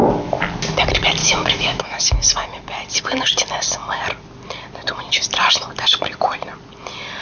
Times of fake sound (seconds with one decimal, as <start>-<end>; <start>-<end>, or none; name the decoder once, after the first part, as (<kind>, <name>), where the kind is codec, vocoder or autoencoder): 1.2-2.1 (autoencoder, DAC-VAE)